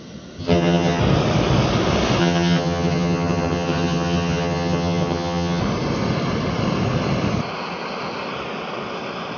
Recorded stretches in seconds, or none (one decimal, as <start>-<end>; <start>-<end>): 0.0-0.4; 1.0-2.2; 5.6-9.4